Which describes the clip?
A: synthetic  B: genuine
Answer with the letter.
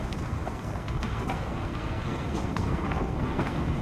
A